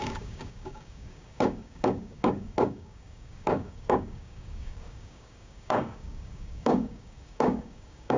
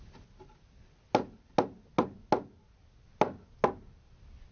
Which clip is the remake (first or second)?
first